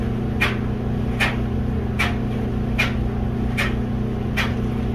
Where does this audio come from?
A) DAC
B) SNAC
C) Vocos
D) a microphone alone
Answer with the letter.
D